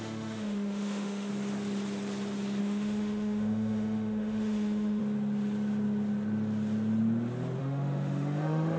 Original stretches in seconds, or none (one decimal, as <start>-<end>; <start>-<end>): 1.3-2.6; 5.0-7.6